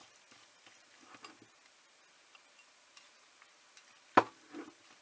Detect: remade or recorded recorded